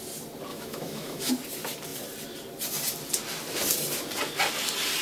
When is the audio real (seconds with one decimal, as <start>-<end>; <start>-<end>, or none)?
0.0-0.5; 1.3-5.0